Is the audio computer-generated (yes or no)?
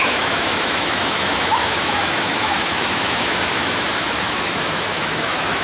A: yes